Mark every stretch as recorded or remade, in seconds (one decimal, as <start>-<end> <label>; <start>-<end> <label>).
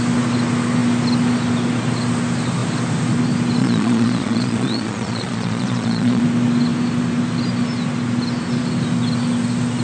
0.0-3.6 recorded; 3.6-6.2 remade; 6.2-9.8 recorded